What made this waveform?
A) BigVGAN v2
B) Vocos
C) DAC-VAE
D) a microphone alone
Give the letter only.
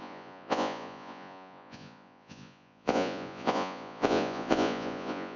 B